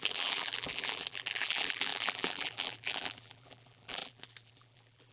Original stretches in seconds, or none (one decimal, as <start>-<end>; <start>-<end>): none

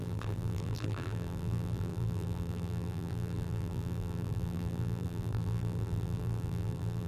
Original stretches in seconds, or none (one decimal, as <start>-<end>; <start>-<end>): none

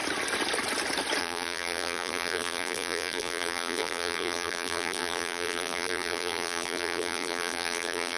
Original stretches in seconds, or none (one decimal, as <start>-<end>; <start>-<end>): 0.0-1.2

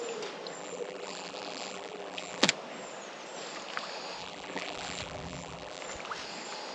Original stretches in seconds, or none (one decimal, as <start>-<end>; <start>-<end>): 0.0-0.6; 2.5-4.2; 5.8-6.7

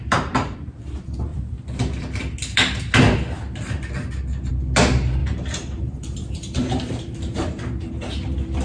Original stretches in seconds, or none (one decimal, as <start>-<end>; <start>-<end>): 0.0-5.2; 7.9-8.6